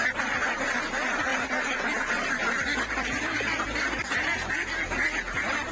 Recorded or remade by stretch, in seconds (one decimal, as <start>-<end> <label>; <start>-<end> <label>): 0.0-5.7 recorded